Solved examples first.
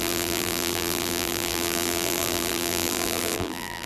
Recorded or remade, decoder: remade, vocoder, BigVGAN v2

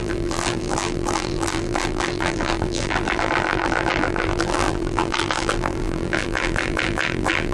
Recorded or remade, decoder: remade, vocoder, BigVGAN v2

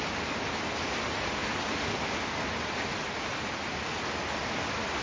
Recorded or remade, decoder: recorded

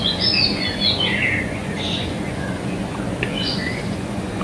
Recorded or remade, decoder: remade, vocoder, Vocos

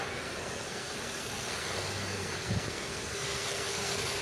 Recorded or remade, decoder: remade, codec, SNAC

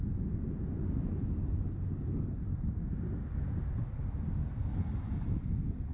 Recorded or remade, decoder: recorded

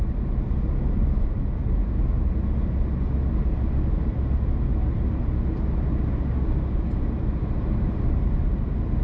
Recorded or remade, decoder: recorded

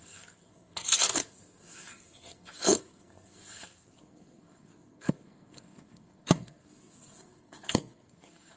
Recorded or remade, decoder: remade, codec, SNAC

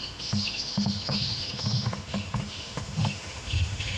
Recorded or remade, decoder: remade, autoencoder, DAC-VAE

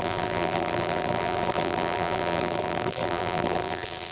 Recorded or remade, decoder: remade, vocoder, BigVGAN v2